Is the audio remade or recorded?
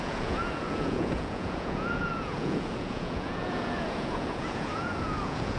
remade